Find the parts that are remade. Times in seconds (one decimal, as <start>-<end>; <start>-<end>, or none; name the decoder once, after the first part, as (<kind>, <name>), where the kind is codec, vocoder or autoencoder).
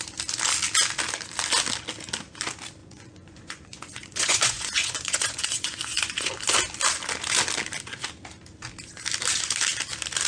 2.8-6.3 (vocoder, Vocos)